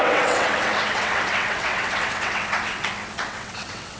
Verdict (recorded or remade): remade